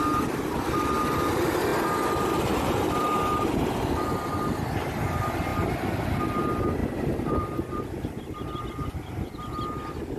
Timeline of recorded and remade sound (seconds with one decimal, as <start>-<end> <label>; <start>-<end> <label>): 0.0-1.7 recorded; 1.7-3.2 remade; 3.2-5.5 recorded; 5.5-6.1 remade; 6.1-6.8 recorded; 6.8-8.6 remade; 8.6-10.2 recorded

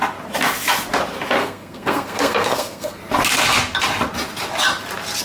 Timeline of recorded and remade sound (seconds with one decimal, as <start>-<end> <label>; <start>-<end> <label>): 0.0-1.4 recorded; 1.4-3.0 remade; 3.0-5.2 recorded

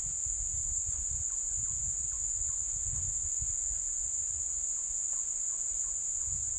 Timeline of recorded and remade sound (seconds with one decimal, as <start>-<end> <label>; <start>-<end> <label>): 0.0-0.5 recorded; 0.5-1.0 remade; 1.0-2.6 recorded; 2.6-3.3 remade; 3.3-6.6 recorded

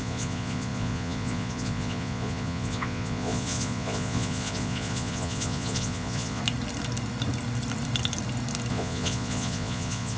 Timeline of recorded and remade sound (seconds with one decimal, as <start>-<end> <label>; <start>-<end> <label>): 0.0-6.4 remade; 6.4-8.7 recorded; 8.7-10.2 remade

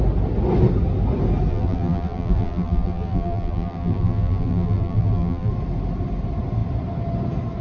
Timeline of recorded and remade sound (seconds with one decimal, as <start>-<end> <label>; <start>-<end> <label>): 0.0-1.5 recorded; 1.5-5.5 remade; 5.5-7.6 recorded

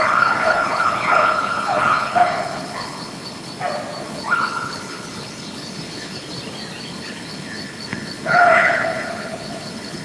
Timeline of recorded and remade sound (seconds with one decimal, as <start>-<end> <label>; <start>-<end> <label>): 0.0-3.5 remade; 3.5-4.0 recorded; 4.0-6.3 remade; 6.3-6.8 recorded; 6.8-10.0 remade

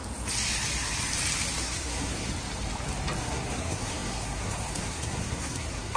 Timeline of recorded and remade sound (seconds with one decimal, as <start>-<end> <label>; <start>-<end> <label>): 0.0-1.6 recorded; 1.6-2.3 remade; 2.3-3.2 recorded; 3.2-6.0 remade